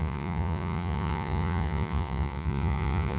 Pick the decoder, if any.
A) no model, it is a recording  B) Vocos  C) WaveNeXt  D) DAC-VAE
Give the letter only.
B